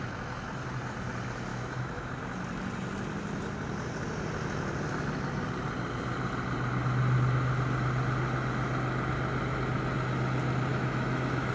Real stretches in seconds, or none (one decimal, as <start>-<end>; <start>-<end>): 0.0-1.5; 2.1-10.7